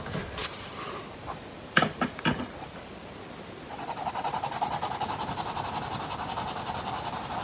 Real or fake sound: real